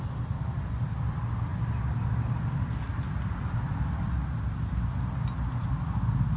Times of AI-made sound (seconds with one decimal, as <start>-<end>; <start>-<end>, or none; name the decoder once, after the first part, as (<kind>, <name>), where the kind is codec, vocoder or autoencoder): none